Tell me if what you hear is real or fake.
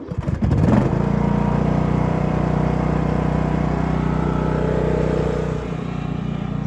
fake